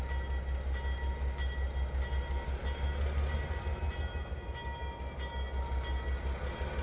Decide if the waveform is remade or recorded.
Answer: recorded